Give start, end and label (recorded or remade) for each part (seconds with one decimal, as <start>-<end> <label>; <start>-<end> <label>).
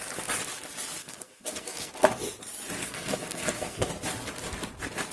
0.0-1.0 recorded; 1.0-1.9 remade; 1.9-2.8 recorded; 2.8-3.9 remade; 3.9-5.1 recorded